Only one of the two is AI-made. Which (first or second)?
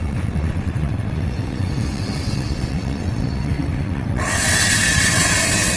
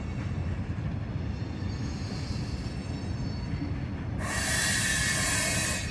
first